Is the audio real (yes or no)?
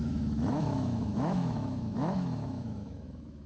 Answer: no